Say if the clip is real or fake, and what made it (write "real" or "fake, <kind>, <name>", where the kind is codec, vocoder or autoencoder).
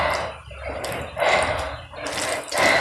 real